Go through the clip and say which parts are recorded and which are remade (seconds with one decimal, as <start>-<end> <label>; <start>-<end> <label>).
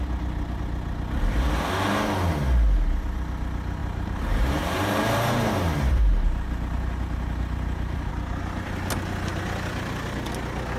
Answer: 0.0-3.8 recorded; 3.8-8.1 remade; 8.1-10.8 recorded